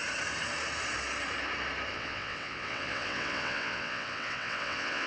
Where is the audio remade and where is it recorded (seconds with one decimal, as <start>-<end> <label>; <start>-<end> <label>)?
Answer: 0.0-1.9 recorded; 1.9-5.1 remade